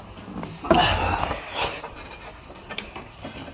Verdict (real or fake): real